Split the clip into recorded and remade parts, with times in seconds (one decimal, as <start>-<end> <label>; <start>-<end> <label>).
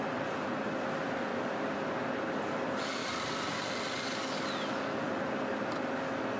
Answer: 0.0-1.3 recorded; 1.3-1.9 remade; 1.9-3.0 recorded; 3.0-3.7 remade; 3.7-6.4 recorded